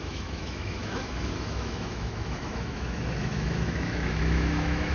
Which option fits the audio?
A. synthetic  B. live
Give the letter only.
A